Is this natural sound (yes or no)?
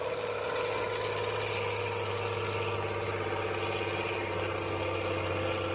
yes